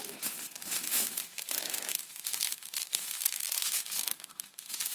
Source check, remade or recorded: remade